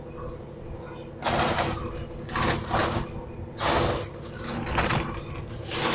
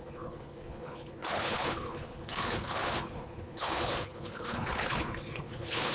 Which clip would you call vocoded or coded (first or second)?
second